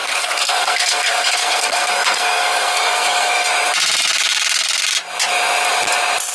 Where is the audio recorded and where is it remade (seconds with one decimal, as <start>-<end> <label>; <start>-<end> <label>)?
0.0-3.5 remade; 3.5-6.3 recorded